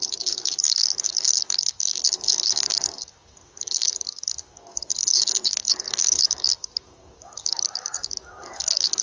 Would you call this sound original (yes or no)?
no